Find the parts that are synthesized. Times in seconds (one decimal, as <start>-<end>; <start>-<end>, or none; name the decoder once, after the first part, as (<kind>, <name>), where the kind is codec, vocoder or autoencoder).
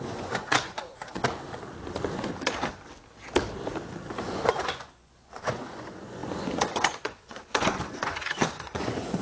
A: 0.0-1.2 (vocoder, Vocos); 4.1-9.2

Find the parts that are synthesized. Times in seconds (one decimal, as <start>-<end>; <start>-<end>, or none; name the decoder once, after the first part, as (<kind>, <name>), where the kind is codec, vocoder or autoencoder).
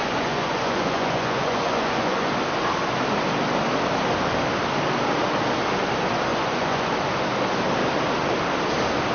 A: 0.0-2.3 (vocoder, Vocos); 6.3-6.9